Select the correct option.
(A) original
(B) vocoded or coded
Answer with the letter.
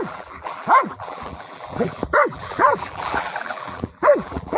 B